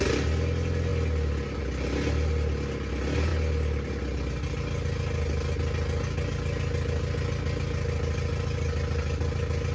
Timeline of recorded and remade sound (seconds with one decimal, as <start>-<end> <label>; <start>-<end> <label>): 0.0-9.7 recorded